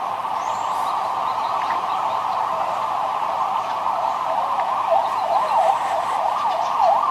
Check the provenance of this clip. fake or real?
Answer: fake